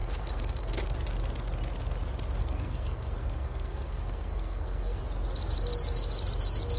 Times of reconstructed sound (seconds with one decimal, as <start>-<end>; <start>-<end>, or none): 0.0-0.8; 2.4-5.0